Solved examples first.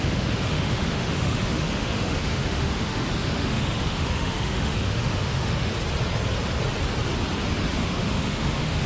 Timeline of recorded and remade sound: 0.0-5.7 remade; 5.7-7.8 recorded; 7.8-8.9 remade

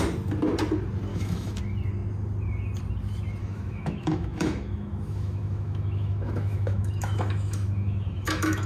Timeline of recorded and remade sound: 0.0-1.1 recorded; 1.1-1.6 remade; 1.6-3.4 recorded; 3.4-8.7 remade

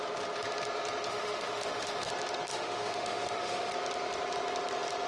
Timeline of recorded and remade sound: 0.0-1.1 recorded; 1.1-2.1 remade; 2.1-2.5 recorded; 2.5-3.7 remade; 3.7-5.1 recorded

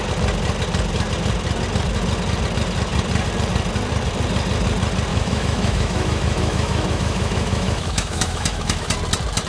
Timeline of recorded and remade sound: 0.0-5.1 recorded; 5.1-8.9 remade; 8.9-9.5 recorded

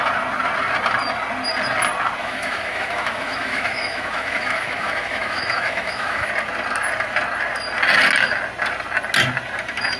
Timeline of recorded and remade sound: 0.0-2.2 recorded; 2.2-6.3 remade; 6.3-10.0 recorded